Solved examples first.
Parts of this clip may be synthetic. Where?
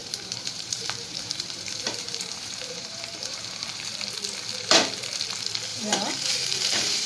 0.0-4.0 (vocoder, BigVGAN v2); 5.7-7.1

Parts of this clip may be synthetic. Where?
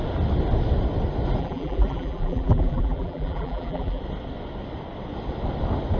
1.4-4.0 (vocoder, BigVGAN v2)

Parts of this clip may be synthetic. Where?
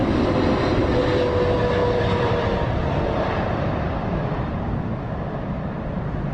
1.8-5.6 (vocoder, BigVGAN v2)